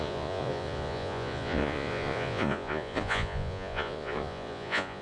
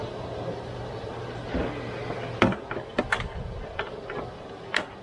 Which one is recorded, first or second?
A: second